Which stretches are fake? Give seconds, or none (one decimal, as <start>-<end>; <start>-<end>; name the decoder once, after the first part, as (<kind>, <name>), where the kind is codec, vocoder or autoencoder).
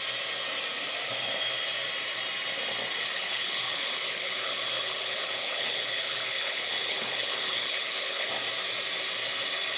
3.0-8.3 (codec, HILCodec)